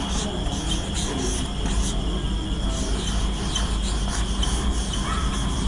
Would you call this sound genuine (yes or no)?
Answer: yes